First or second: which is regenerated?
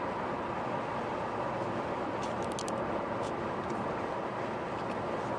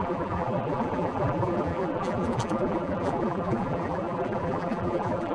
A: second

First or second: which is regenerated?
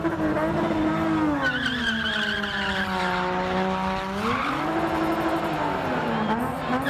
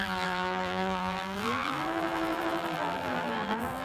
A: second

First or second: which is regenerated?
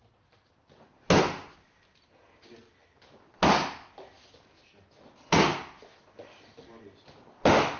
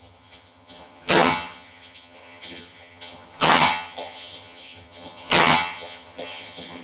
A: second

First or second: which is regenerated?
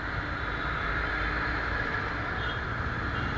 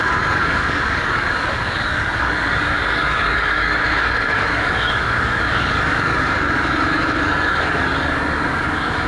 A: second